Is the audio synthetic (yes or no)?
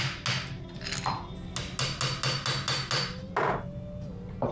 no